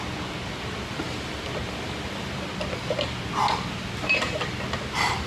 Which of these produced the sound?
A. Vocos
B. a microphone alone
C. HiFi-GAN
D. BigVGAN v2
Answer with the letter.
D